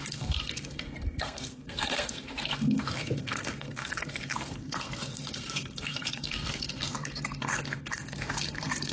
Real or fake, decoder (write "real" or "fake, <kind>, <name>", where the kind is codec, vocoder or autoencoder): fake, codec, SNAC